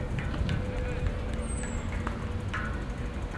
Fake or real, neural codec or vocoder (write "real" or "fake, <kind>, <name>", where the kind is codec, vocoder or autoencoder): real